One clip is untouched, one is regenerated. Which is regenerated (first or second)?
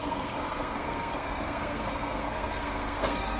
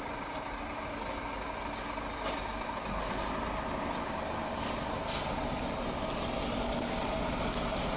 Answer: first